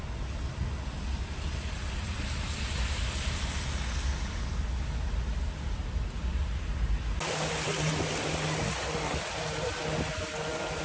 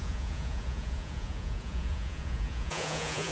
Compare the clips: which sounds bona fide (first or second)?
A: first